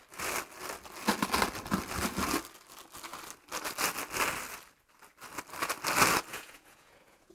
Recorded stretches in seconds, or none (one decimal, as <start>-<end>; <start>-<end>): 0.0-6.3